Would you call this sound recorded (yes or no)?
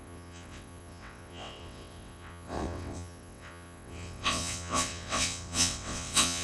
no